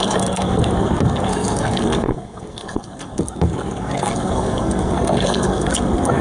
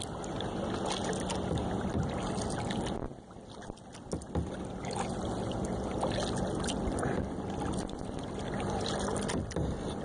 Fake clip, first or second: first